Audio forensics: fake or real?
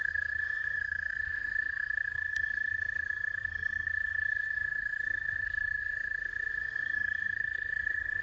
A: fake